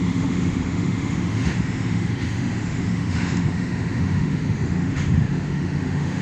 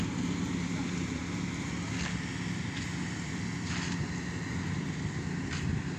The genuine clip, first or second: second